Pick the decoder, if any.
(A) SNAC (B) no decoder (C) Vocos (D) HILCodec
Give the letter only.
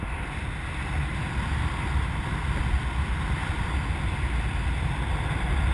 B